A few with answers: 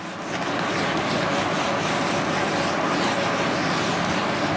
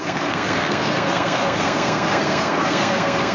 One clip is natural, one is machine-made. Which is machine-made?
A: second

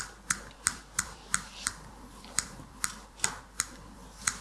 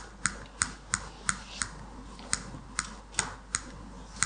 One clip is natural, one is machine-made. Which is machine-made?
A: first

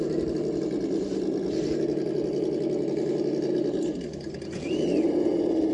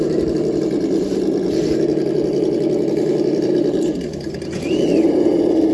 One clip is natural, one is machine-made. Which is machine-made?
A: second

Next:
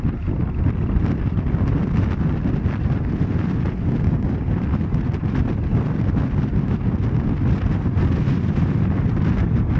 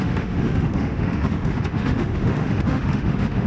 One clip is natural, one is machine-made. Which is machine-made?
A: second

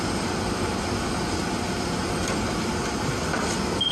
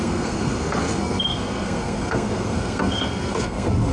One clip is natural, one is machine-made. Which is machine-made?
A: second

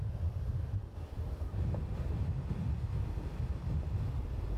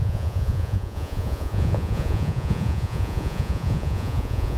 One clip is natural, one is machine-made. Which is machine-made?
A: second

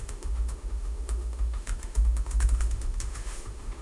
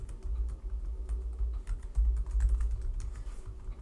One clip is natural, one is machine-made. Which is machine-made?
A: first